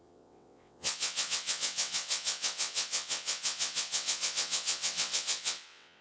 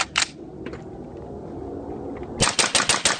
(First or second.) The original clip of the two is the second